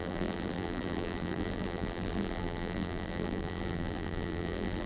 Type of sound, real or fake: fake